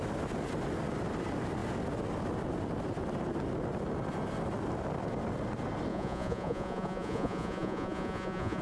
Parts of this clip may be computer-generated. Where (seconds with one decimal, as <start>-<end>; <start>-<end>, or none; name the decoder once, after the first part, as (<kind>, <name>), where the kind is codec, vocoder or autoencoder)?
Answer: 5.9-8.6 (vocoder, Vocos)